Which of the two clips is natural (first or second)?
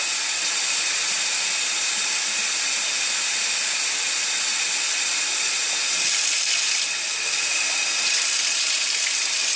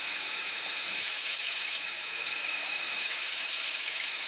first